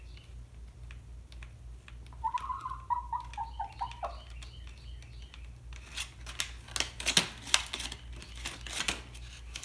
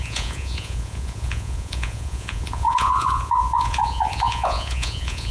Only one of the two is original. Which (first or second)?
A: first